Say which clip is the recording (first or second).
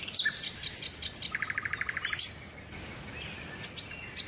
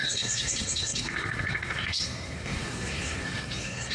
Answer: first